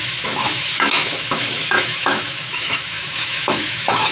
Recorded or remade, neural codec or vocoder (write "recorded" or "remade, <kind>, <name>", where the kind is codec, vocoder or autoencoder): remade, autoencoder, DAC-VAE